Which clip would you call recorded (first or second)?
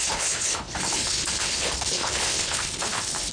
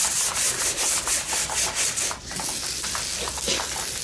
second